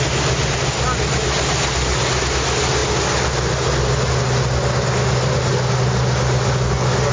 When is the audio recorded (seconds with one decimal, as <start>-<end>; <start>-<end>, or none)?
0.0-7.1